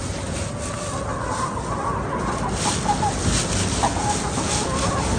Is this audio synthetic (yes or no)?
no